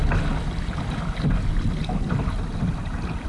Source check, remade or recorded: recorded